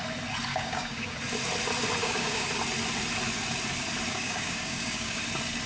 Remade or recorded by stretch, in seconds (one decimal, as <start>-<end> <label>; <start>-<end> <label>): 0.0-0.5 recorded; 0.5-1.1 remade; 1.1-2.0 recorded; 2.0-2.5 remade; 2.5-4.1 recorded; 4.1-5.2 remade; 5.2-5.7 recorded